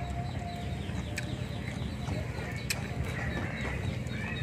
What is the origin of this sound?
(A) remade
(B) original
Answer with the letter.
B